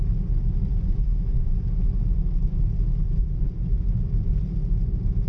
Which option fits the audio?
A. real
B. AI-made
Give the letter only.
A